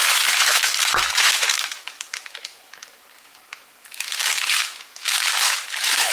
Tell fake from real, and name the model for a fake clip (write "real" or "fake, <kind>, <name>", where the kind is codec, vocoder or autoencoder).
fake, autoencoder, DAC-VAE